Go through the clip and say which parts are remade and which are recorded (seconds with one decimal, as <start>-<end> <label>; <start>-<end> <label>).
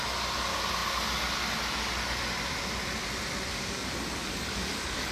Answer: 0.0-3.5 recorded; 3.5-5.1 remade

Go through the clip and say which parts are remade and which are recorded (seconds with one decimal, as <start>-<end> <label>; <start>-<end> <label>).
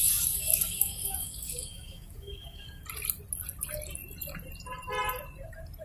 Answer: 0.0-2.8 remade; 2.8-5.8 recorded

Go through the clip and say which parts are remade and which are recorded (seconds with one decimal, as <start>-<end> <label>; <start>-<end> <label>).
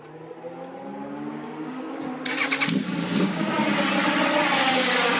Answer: 0.0-1.3 recorded; 1.3-2.0 remade; 2.0-2.8 recorded; 2.8-3.5 remade; 3.5-4.6 recorded; 4.6-5.2 remade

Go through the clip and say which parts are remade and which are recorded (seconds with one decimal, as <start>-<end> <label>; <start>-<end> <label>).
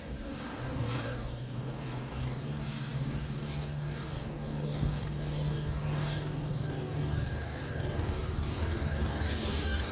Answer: 0.0-9.9 remade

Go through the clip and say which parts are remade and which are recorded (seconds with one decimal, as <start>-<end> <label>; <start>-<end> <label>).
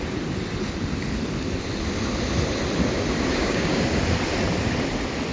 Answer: 0.0-3.3 recorded; 3.3-3.8 remade; 3.8-5.3 recorded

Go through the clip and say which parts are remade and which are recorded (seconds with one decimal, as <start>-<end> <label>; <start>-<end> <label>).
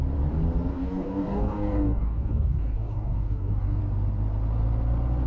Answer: 0.0-0.7 recorded; 0.7-3.8 remade; 3.8-5.3 recorded